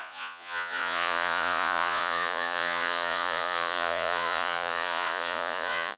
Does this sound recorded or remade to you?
remade